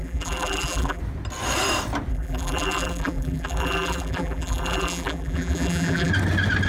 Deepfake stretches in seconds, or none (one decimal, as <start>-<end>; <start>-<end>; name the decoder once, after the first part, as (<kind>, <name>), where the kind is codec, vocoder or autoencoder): 0.0-1.0 (vocoder, BigVGAN v2); 2.1-6.1